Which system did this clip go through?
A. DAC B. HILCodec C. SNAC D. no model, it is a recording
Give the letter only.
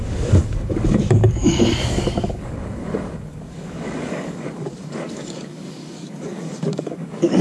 A